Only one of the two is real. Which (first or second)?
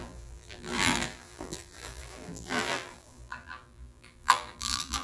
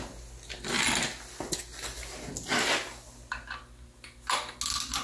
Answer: second